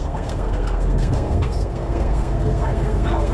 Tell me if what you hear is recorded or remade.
remade